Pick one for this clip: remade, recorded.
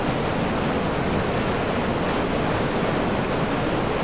recorded